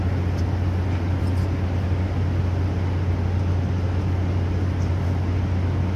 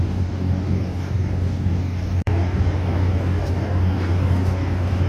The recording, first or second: first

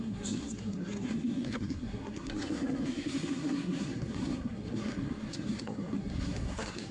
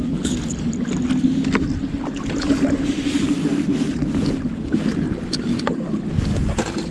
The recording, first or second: second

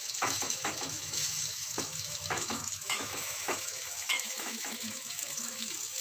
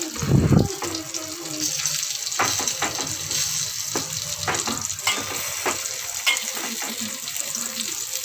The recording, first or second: second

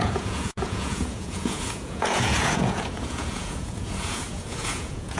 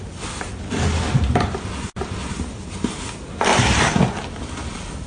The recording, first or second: second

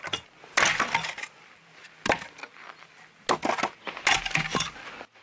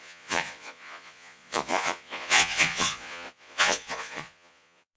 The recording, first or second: first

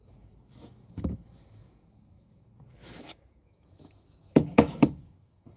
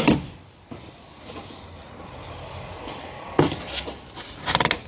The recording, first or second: second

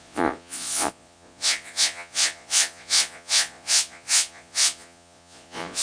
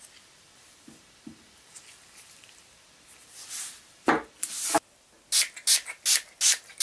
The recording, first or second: second